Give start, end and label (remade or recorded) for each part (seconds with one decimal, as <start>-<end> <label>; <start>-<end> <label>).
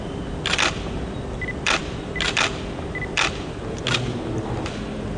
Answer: 0.0-5.2 recorded